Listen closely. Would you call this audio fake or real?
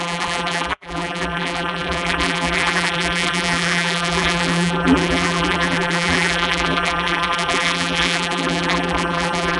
fake